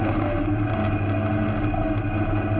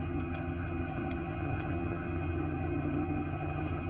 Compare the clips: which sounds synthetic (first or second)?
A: second